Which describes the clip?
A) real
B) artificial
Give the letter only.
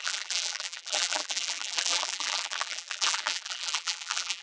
B